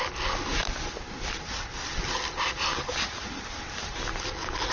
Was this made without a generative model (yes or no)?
yes